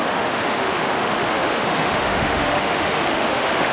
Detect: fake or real fake